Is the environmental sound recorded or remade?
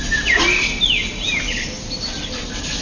recorded